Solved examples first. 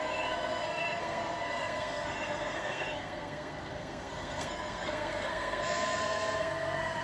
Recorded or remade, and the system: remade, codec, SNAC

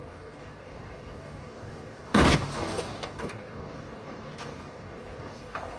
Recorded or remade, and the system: remade, codec, DAC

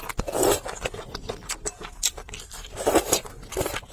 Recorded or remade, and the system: recorded